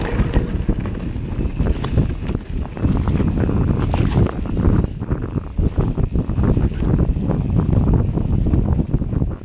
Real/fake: real